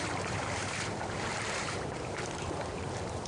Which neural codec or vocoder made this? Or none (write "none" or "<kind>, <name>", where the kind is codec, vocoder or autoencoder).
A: vocoder, BigVGAN v2